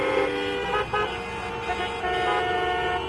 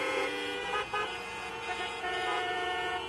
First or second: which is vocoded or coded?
second